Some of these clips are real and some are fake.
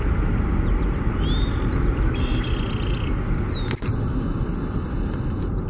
real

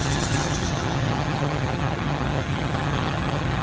fake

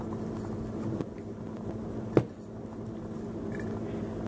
real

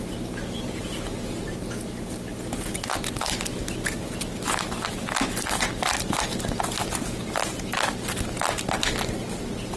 real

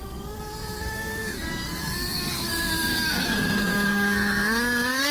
fake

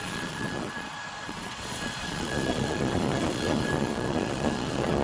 fake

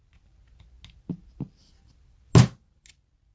real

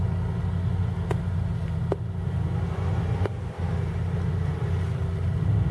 real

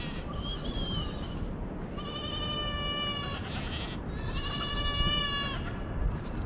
real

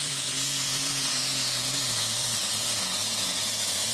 fake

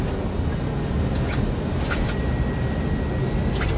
real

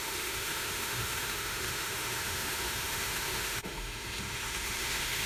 fake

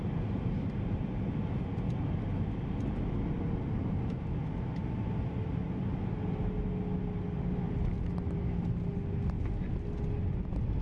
real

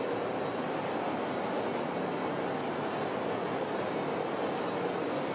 real